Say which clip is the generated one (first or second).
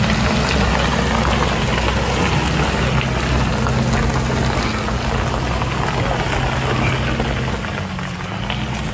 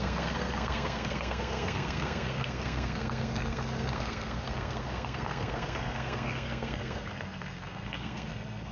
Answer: second